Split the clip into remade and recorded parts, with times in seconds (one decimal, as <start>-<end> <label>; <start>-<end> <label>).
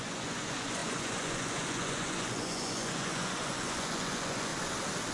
0.0-4.5 remade; 4.5-5.1 recorded